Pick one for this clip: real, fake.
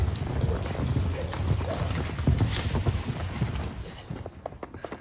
real